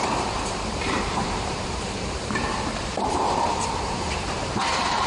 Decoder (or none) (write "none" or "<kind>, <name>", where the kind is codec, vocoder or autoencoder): vocoder, BigVGAN v2